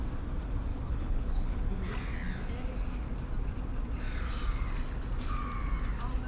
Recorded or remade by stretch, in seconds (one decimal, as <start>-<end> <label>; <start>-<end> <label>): 0.0-0.7 recorded; 0.7-1.7 remade; 1.7-6.3 recorded